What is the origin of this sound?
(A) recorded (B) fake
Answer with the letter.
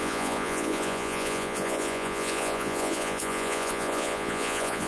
B